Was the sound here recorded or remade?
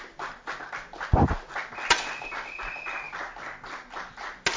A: recorded